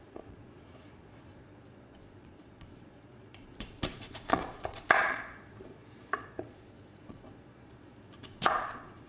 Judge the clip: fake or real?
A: fake